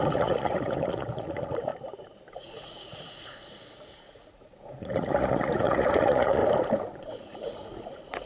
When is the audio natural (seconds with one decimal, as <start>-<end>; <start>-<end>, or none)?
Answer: 1.7-2.3; 6.4-7.0